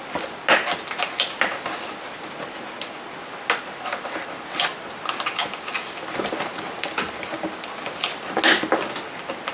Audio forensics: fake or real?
real